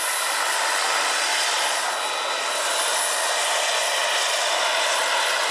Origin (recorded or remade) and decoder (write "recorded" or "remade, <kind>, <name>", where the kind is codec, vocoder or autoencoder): recorded